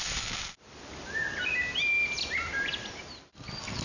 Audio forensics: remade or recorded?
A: recorded